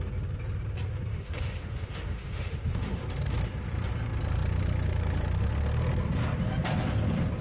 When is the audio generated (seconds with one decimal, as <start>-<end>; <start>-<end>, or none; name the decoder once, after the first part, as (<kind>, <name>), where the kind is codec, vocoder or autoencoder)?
1.1-3.0 (autoencoder, DAC-VAE)